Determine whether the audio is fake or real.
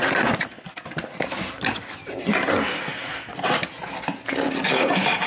real